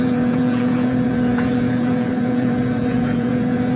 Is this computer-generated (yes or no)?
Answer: yes